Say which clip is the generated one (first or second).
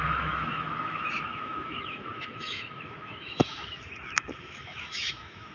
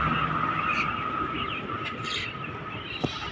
first